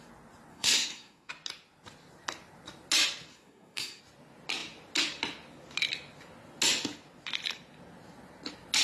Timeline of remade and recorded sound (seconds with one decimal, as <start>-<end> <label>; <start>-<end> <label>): 0.0-0.5 recorded; 0.5-1.3 remade; 1.3-3.3 recorded; 3.3-4.0 remade; 4.0-8.8 recorded